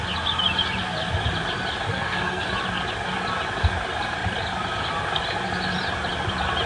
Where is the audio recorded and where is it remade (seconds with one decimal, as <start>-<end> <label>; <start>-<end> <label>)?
0.0-1.9 recorded; 1.9-2.5 remade; 2.5-6.7 recorded